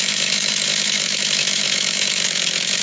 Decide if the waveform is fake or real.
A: fake